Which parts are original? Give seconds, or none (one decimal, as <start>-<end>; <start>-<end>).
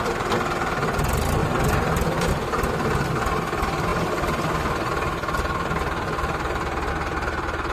0.0-1.4; 2.3-7.7